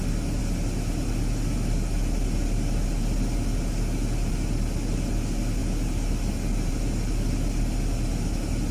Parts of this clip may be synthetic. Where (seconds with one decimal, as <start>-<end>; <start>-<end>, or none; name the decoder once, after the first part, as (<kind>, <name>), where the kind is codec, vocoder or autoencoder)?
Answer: none